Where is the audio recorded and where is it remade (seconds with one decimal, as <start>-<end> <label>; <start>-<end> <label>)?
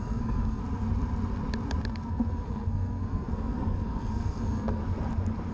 0.0-0.6 remade; 0.6-1.9 recorded; 1.9-4.8 remade; 4.8-5.5 recorded